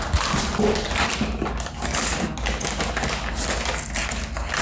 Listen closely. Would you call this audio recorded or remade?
recorded